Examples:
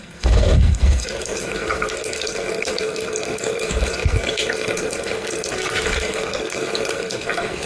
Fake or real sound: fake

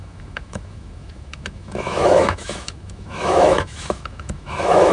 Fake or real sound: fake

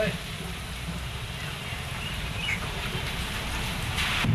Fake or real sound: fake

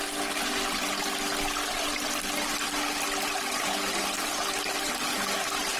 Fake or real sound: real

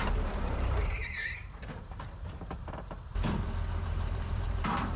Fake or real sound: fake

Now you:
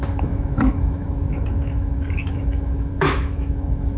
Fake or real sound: fake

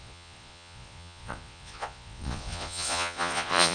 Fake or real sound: fake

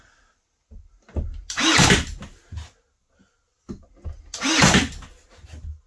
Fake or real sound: real